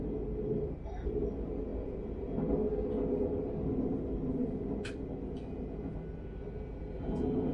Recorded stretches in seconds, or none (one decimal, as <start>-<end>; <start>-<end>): 0.0-7.5